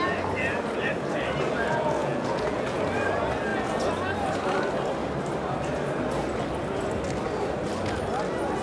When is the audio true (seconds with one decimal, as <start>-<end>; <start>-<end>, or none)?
0.0-2.0; 2.8-8.6